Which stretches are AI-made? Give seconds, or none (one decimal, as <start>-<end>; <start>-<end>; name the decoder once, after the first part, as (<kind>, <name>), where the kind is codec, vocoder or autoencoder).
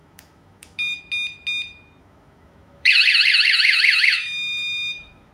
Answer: 0.0-1.0 (autoencoder, DAC-VAE); 2.0-5.3